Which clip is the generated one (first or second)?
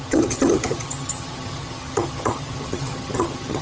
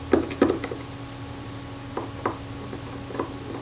first